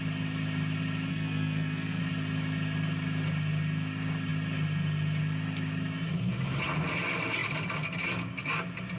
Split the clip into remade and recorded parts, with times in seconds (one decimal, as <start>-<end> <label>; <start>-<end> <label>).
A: 0.0-1.1 recorded; 1.1-2.0 remade; 2.0-9.0 recorded